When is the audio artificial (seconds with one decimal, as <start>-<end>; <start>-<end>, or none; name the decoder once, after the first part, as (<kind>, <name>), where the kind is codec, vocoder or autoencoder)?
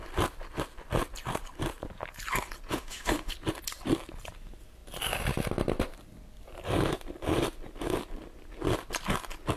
2.7-3.3 (autoencoder, DAC-VAE)